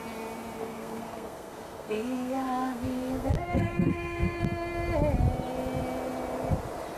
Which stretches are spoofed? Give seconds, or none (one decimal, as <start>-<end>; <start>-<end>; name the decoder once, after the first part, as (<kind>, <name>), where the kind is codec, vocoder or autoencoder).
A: 0.6-4.4 (codec, SNAC)